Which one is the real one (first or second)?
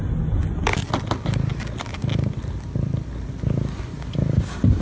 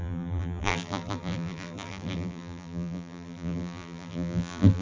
first